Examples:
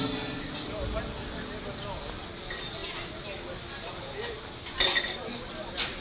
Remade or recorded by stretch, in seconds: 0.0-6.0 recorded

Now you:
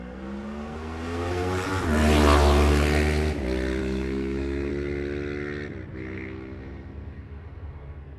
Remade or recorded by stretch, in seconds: 0.0-1.7 remade; 1.7-3.8 recorded; 3.8-4.7 remade; 4.7-5.9 recorded; 5.9-8.2 remade

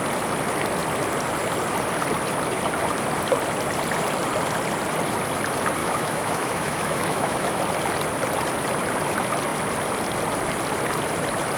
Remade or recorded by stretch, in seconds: 0.0-5.8 recorded; 5.8-7.6 remade; 7.6-11.6 recorded

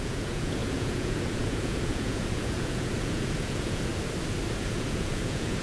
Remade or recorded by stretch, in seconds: 0.0-3.9 remade; 3.9-4.6 recorded; 4.6-5.6 remade

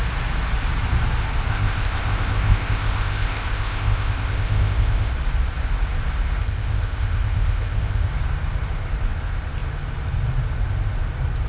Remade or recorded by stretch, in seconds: 0.0-1.5 recorded; 1.5-5.1 remade; 5.1-6.4 recorded; 6.4-8.1 remade; 8.1-11.5 recorded

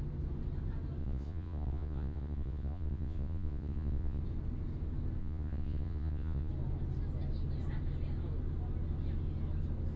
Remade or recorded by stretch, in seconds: 0.0-1.0 recorded; 1.0-4.2 remade; 4.2-5.2 recorded; 5.2-6.5 remade; 6.5-10.0 recorded

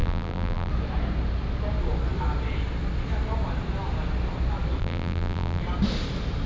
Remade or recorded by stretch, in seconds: 0.0-0.7 remade; 0.7-4.8 recorded; 4.8-5.6 remade; 5.6-6.5 recorded

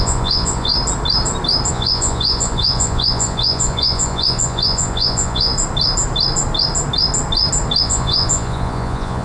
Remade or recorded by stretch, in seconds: 0.0-0.7 remade; 0.7-1.7 recorded; 1.7-5.5 remade; 5.5-7.8 recorded; 7.8-9.2 remade